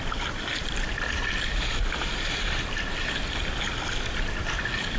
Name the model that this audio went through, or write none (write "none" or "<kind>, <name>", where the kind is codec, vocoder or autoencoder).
none